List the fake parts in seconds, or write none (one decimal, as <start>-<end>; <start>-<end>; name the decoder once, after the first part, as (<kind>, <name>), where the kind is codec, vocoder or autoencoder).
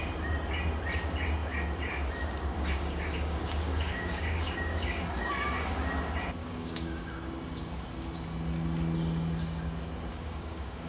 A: 2.5-5.7 (codec, DAC); 6.4-7.0; 10.1-10.9